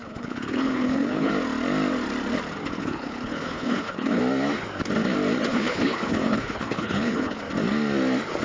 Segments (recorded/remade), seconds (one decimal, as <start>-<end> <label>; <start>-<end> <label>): 0.0-1.3 remade; 1.3-2.8 recorded; 2.8-4.2 remade; 4.2-5.5 recorded; 5.5-7.4 remade; 7.4-8.4 recorded